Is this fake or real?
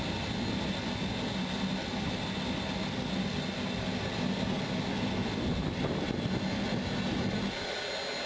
real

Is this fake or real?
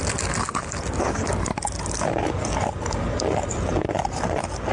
real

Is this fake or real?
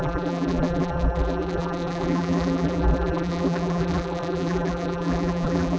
fake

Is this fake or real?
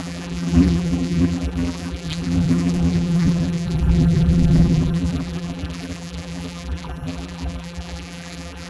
fake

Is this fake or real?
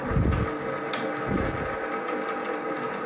real